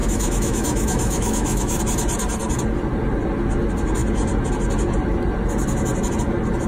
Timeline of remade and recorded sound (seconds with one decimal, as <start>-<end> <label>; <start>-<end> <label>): 0.0-1.8 remade; 1.8-6.7 recorded